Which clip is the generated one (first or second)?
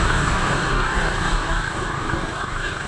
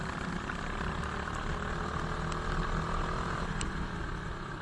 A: first